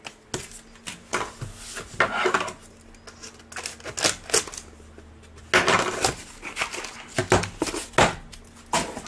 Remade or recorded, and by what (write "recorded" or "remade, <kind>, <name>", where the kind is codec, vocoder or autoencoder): recorded